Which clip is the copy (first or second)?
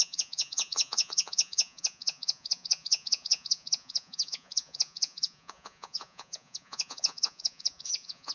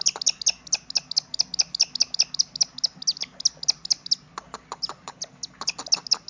first